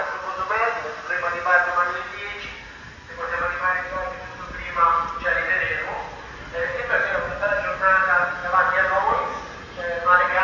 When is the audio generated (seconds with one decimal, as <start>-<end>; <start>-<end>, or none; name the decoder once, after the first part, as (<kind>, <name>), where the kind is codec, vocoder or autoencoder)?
none